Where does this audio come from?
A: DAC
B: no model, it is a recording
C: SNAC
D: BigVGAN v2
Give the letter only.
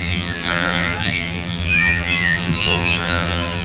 D